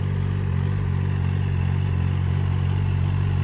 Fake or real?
real